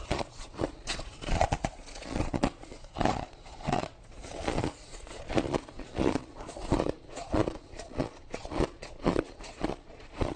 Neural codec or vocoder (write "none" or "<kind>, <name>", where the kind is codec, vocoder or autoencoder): vocoder, Vocos